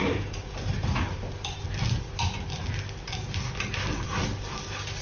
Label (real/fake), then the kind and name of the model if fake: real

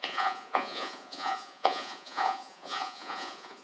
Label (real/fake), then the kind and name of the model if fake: fake, vocoder, Vocos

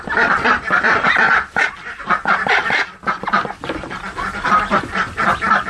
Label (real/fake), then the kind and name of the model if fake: fake, vocoder, BigVGAN v2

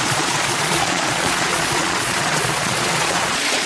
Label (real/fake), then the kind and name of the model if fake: fake, vocoder, Vocos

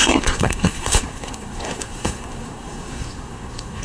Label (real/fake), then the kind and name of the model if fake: fake, codec, SNAC